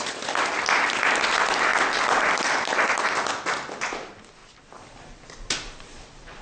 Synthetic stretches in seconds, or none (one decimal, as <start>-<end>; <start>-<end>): 1.7-3.0; 4.4-6.4